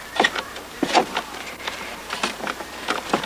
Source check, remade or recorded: remade